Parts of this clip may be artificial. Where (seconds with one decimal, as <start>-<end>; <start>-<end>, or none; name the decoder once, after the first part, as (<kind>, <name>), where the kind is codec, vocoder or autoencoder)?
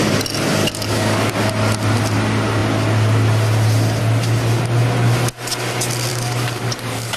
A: 0.6-1.3 (codec, DAC); 6.1-7.2